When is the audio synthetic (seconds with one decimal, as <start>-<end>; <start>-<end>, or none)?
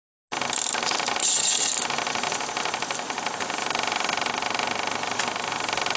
1.2-1.7